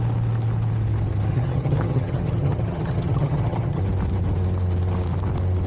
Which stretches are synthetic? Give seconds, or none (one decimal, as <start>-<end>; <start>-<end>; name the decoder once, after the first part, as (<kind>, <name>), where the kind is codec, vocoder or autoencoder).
1.3-3.8 (vocoder, HiFi-GAN)